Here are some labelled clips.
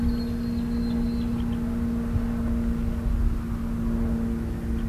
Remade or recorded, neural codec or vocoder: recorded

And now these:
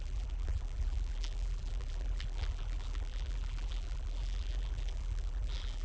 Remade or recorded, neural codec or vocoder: remade, vocoder, BigVGAN v2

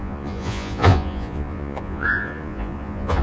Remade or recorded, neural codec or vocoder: remade, vocoder, Vocos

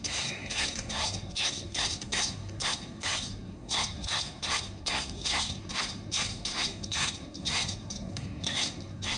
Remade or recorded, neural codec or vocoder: remade, codec, SNAC